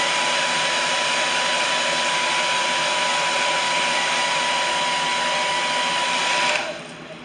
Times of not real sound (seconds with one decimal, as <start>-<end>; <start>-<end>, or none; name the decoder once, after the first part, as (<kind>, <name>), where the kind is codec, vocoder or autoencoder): none